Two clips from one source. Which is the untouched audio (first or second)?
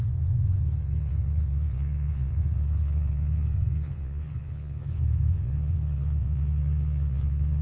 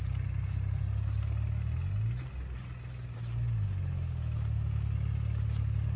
second